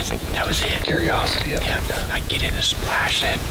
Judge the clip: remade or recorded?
remade